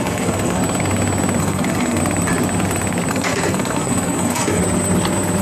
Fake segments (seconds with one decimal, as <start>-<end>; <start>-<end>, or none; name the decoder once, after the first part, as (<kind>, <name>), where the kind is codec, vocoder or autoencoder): 0.0-0.6 (codec, SNAC); 1.4-2.0; 3.1-4.6